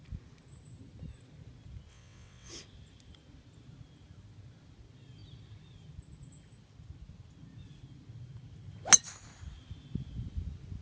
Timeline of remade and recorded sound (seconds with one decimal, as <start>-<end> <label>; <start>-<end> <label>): 0.0-1.9 recorded; 1.9-2.5 remade; 2.5-10.8 recorded